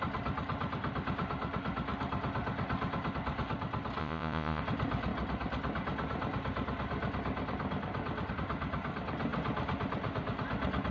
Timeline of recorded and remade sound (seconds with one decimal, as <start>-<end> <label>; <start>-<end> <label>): 0.0-4.0 recorded; 4.0-4.6 remade; 4.6-10.9 recorded